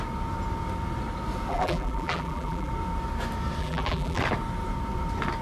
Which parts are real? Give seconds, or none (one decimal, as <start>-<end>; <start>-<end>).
0.0-1.5; 2.7-3.6; 4.2-5.4